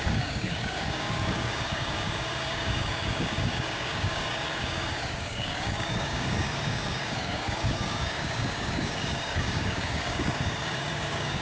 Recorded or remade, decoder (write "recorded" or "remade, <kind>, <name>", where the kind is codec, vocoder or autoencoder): remade, codec, DAC